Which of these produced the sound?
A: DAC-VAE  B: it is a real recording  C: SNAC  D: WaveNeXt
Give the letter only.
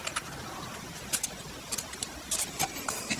B